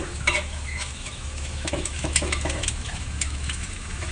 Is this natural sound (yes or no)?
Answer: no